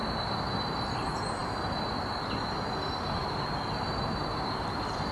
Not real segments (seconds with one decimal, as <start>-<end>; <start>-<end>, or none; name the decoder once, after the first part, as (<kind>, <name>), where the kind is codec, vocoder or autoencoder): none